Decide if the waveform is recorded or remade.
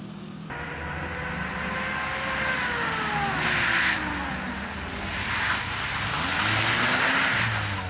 recorded